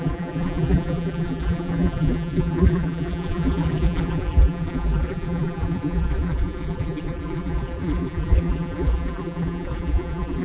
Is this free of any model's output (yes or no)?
no